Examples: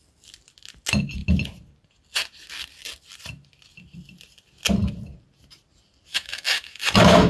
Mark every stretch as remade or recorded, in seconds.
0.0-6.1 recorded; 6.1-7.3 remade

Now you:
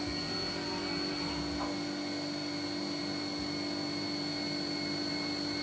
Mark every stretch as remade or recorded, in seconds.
0.0-5.6 recorded

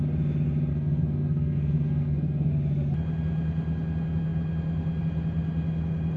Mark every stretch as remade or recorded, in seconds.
0.0-0.7 recorded; 0.7-2.5 remade; 2.5-6.2 recorded

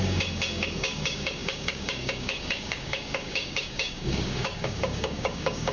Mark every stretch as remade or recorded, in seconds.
0.0-5.7 remade

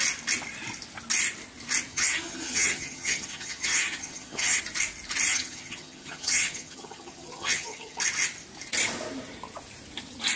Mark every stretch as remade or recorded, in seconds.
0.0-1.9 recorded; 1.9-4.6 remade; 4.6-5.3 recorded; 5.3-8.0 remade; 8.0-10.4 recorded

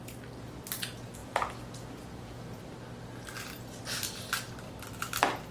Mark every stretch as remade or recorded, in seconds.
0.0-1.2 recorded; 1.2-2.6 remade; 2.6-5.5 recorded

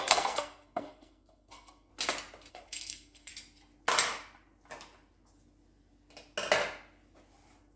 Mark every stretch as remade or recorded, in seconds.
0.0-1.9 remade; 1.9-2.5 recorded; 2.5-3.3 remade; 3.3-7.8 recorded

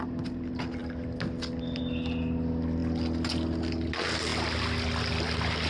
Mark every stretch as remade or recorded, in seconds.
0.0-5.7 recorded